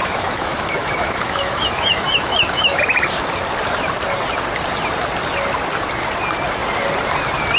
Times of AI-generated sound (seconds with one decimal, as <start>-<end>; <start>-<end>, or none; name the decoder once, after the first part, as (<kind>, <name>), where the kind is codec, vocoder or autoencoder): 0.0-2.8 (autoencoder, DAC-VAE)